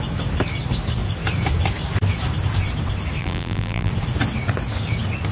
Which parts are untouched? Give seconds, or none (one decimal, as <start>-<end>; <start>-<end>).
0.0-3.2; 3.9-5.3

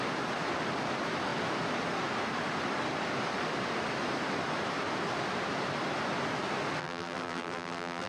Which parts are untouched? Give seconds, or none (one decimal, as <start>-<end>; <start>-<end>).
0.0-6.8